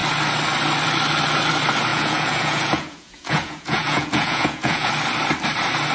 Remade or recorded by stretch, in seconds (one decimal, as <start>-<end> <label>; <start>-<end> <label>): 0.0-1.9 recorded; 1.9-4.9 remade; 4.9-5.9 recorded